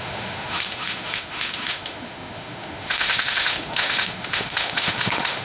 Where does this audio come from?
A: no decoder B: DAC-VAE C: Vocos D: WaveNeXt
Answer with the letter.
B